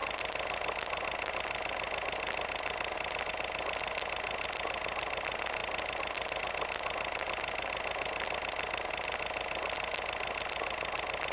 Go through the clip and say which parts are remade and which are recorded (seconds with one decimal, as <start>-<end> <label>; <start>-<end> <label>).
0.0-11.3 recorded